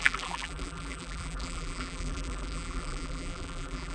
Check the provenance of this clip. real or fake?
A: fake